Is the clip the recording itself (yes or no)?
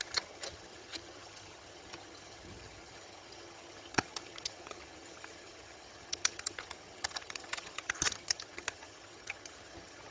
no